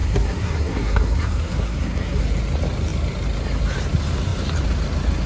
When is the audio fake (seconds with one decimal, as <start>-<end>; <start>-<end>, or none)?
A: 0.0-2.2